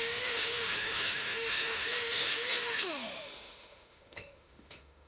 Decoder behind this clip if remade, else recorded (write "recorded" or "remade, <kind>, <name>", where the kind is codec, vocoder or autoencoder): remade, autoencoder, DAC-VAE